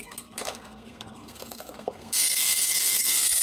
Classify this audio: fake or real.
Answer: fake